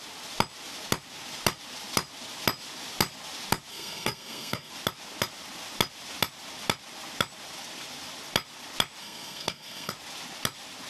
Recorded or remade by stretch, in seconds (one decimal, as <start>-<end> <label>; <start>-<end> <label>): 0.0-3.7 recorded; 3.7-4.7 remade; 4.7-9.0 recorded; 9.0-9.9 remade; 9.9-10.9 recorded